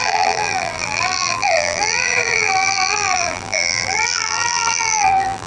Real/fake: fake